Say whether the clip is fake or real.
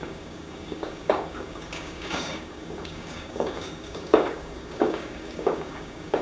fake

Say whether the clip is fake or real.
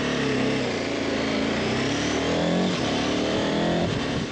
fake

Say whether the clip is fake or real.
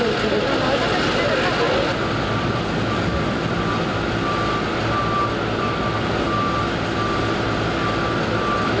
real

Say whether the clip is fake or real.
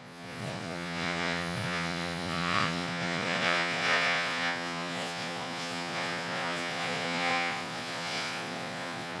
fake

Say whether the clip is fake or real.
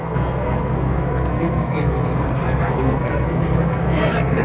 fake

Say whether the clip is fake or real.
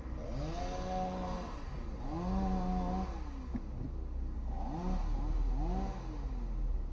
real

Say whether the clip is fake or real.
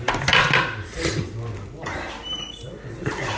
real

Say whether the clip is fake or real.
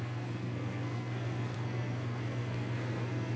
fake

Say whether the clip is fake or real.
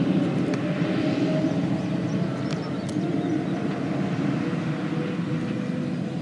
real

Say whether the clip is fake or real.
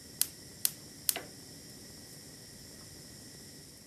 real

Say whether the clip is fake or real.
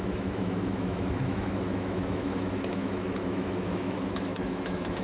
fake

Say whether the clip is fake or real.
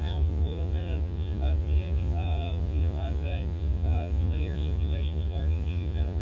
fake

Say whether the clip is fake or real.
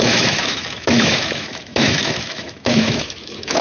fake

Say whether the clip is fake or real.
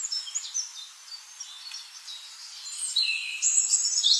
fake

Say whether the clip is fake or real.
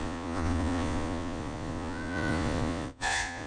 fake